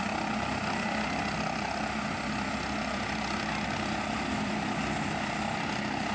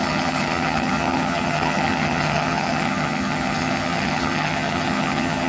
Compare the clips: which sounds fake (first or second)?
second